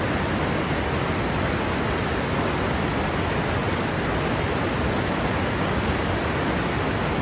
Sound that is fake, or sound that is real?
real